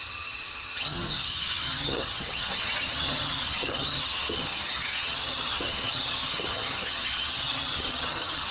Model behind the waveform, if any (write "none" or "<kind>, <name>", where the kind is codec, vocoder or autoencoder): vocoder, HiFi-GAN